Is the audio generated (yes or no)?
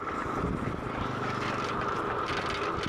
no